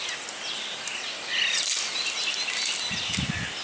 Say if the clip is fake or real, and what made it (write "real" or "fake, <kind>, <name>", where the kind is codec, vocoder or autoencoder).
real